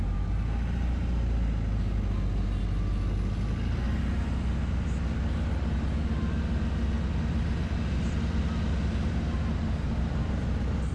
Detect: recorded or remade recorded